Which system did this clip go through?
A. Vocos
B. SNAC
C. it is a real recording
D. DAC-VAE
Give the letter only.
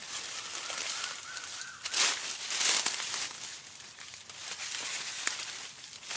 C